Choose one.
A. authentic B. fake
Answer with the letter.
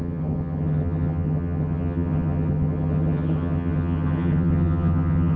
B